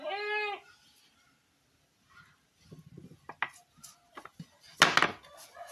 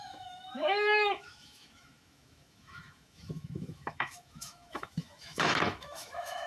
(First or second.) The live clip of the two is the first